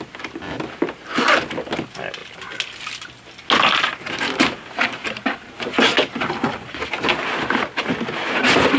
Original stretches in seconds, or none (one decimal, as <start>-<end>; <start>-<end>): 0.0-8.8